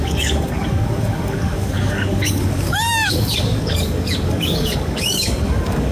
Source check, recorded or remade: remade